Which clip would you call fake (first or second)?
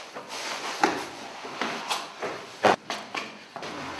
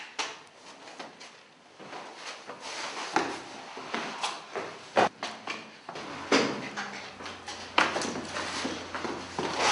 first